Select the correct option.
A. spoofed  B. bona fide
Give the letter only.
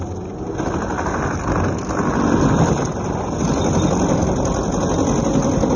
B